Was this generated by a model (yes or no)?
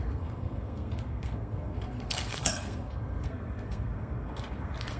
yes